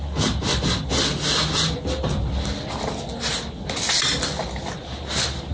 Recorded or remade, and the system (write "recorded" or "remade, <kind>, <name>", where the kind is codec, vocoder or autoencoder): recorded